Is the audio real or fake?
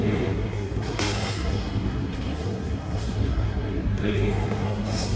fake